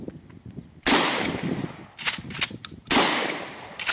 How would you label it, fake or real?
real